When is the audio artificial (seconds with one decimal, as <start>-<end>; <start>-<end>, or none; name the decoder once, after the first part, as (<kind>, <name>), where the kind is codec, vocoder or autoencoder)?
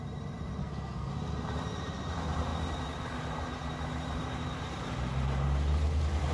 0.6-1.1 (codec, SNAC)